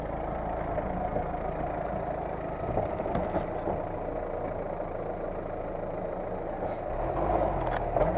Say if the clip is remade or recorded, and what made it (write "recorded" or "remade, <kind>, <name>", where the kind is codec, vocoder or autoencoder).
recorded